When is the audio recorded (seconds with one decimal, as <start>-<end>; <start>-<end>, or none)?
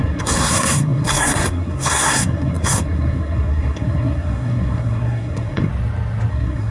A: 5.7-6.3